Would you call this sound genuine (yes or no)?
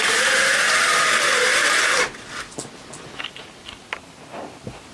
yes